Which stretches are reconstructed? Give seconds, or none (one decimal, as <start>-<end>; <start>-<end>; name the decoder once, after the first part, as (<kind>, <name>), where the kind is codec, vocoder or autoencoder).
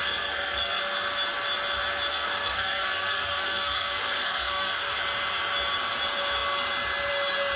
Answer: 0.0-0.8 (codec, SNAC); 2.1-5.0